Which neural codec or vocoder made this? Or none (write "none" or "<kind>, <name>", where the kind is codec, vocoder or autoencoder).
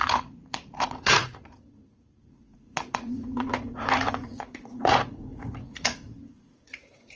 vocoder, Vocos